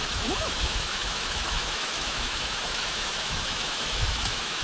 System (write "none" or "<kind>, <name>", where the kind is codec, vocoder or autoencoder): autoencoder, DAC-VAE